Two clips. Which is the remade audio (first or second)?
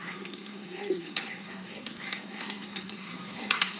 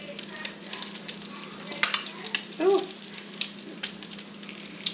first